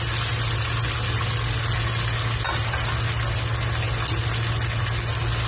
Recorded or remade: recorded